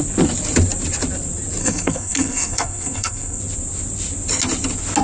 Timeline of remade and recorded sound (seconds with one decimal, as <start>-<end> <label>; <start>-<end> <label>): 0.0-1.6 recorded; 1.6-3.4 remade; 3.4-5.0 recorded